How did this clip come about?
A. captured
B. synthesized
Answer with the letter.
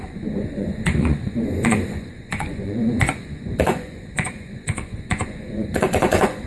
B